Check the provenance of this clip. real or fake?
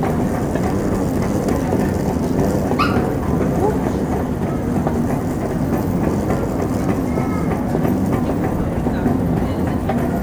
real